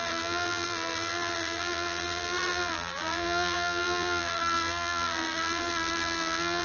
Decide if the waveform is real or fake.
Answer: fake